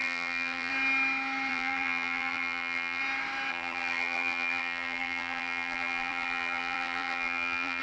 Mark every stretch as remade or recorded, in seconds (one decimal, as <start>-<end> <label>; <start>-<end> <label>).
0.0-0.7 remade; 0.7-1.5 recorded; 1.5-3.0 remade; 3.0-3.5 recorded; 3.5-7.8 remade

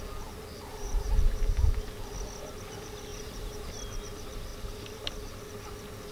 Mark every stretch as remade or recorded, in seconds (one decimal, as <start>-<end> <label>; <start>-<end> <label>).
0.0-0.7 recorded; 0.7-1.4 remade; 1.4-3.1 recorded; 3.1-3.7 remade; 3.7-6.1 recorded

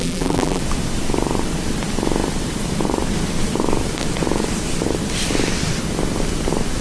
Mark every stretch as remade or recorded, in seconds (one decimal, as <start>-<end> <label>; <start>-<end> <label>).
0.0-0.6 remade; 0.6-6.8 recorded

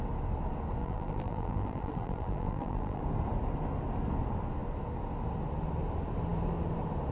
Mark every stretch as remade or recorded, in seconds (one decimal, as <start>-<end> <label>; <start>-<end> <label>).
0.0-0.8 recorded; 0.8-3.0 remade; 3.0-7.1 recorded

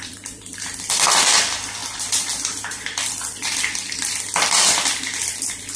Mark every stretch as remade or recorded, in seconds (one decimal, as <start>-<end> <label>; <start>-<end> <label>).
0.0-5.8 remade

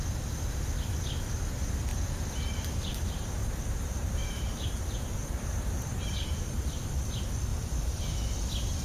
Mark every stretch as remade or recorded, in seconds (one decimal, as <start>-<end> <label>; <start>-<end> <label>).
0.0-1.9 recorded; 1.9-6.9 remade; 6.9-7.5 recorded; 7.5-8.0 remade; 8.0-8.8 recorded

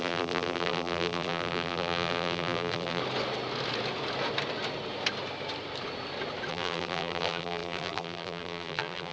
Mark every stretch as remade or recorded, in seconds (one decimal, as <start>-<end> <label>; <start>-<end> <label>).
0.0-3.0 remade; 3.0-6.5 recorded; 6.5-9.1 remade